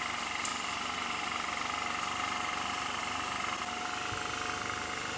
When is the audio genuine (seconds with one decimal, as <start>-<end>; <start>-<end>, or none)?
0.0-5.2